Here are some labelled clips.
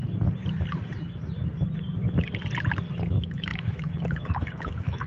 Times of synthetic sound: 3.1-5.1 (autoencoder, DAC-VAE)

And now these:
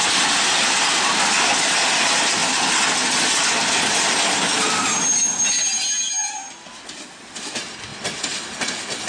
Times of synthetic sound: none

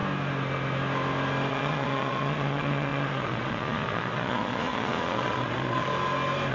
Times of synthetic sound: 1.5-5.9 (vocoder, Vocos)

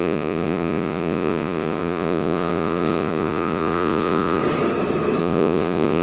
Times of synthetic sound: 0.0-4.4 (vocoder, Vocos); 5.2-6.0

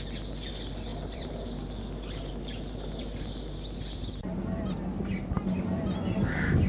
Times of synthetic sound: 0.9-2.3 (vocoder, BigVGAN v2)

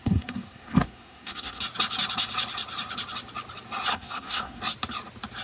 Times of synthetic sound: 0.0-1.6 (codec, SNAC); 3.9-4.6

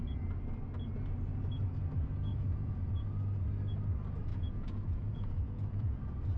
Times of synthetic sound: 2.3-2.9 (vocoder, Vocos); 4.3-6.0